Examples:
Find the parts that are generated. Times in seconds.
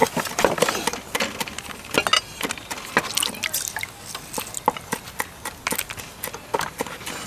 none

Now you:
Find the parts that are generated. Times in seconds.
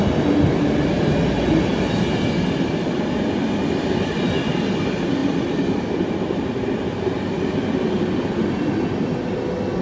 5.2-7.2 (vocoder, BigVGAN v2)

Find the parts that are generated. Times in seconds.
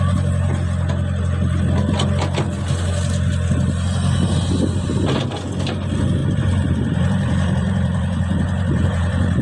6.2-9.4 (vocoder, BigVGAN v2)